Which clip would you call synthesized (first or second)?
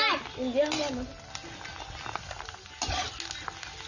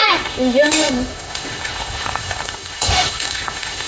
second